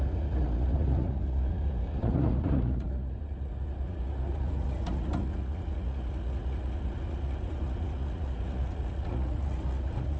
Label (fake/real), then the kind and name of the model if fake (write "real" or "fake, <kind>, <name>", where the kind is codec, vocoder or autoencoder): fake, vocoder, Vocos